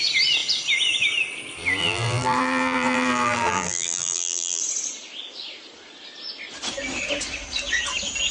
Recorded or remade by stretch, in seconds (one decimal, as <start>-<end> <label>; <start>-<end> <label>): 0.0-1.8 recorded; 1.8-4.6 remade; 4.6-8.3 recorded

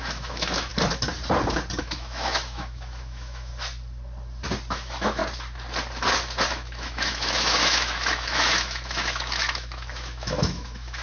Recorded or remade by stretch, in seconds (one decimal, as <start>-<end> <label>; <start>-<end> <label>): 0.0-0.7 remade; 0.7-1.8 recorded; 1.8-3.5 remade; 3.5-4.7 recorded; 4.7-5.2 remade; 5.2-6.5 recorded; 6.5-11.0 remade